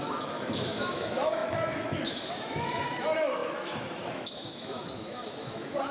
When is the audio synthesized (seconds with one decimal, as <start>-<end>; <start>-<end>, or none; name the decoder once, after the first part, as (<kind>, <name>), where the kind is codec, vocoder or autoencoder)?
0.0-5.9 (autoencoder, DAC-VAE)